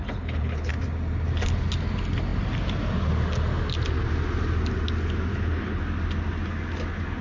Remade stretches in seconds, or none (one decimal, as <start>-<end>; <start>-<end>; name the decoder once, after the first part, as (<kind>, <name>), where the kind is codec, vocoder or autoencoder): 0.0-0.7 (codec, HILCodec); 5.3-5.8